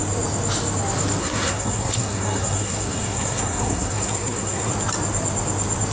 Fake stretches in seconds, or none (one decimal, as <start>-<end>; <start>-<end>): 1.2-4.7